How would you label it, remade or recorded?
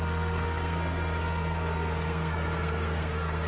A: remade